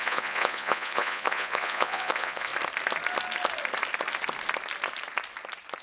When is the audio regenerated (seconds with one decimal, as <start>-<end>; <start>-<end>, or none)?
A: 0.0-2.5